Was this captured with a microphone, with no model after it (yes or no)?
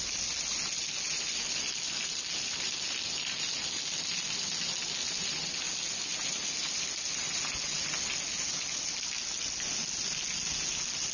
yes